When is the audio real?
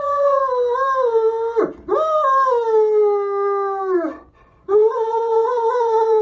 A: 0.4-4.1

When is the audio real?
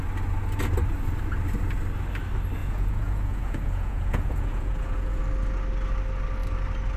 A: 0.0-2.6; 5.2-7.0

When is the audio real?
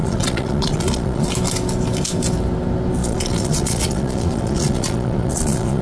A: 1.3-3.0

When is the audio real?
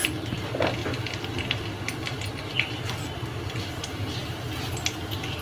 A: 0.0-5.4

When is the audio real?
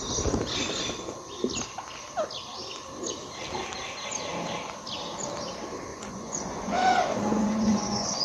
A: 0.0-5.9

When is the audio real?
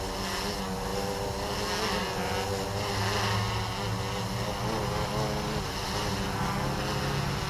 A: 0.0-7.5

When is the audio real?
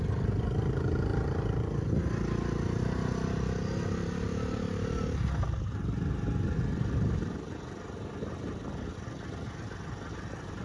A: 0.0-10.6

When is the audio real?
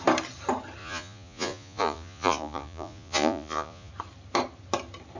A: 0.0-0.8; 3.9-5.2